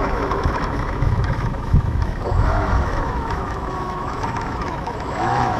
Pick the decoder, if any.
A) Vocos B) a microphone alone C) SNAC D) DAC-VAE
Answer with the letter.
D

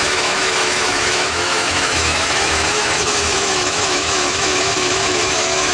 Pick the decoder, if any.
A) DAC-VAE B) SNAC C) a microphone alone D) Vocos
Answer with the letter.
A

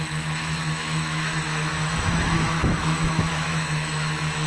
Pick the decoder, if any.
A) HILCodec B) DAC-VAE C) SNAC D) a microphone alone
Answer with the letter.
B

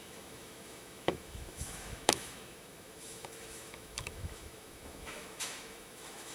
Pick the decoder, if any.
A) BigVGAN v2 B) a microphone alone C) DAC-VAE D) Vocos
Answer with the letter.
C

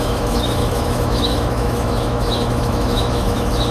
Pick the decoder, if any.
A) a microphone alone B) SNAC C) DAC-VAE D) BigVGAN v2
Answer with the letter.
C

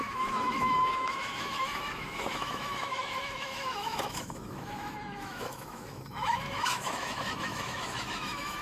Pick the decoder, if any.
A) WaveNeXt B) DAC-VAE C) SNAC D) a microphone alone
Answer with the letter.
B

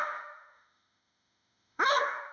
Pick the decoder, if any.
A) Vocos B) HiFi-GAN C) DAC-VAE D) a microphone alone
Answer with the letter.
C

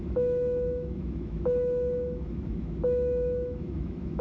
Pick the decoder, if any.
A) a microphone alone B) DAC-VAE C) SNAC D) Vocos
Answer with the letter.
B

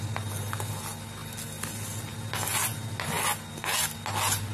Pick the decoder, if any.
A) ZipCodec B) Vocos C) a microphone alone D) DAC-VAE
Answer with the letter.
C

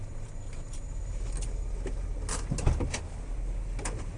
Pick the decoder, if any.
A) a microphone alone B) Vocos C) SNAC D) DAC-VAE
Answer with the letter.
A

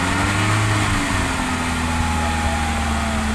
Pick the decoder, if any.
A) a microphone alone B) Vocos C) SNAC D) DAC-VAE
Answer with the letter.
A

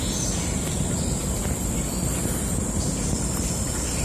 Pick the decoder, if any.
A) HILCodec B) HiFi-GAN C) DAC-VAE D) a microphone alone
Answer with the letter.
D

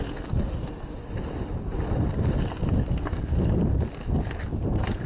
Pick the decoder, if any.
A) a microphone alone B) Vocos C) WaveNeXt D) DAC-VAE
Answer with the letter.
A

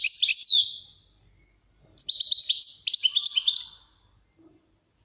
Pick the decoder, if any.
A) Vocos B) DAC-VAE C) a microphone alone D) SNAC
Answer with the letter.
C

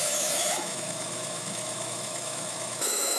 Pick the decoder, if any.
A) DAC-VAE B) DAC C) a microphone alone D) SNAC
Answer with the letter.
A